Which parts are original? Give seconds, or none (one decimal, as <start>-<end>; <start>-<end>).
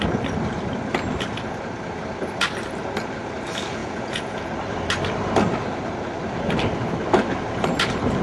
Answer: 0.0-3.8; 4.5-8.2